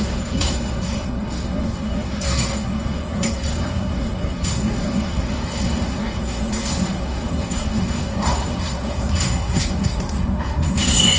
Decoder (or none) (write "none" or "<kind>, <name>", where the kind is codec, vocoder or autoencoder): codec, SNAC